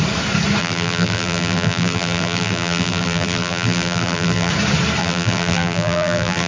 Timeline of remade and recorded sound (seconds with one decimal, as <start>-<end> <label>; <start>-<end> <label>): 0.0-0.6 recorded; 0.6-4.5 remade; 4.5-5.0 recorded; 5.0-6.5 remade